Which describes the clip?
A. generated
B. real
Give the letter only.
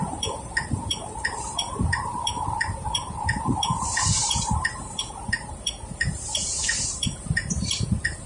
A